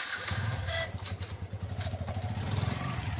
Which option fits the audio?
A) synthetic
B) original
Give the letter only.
A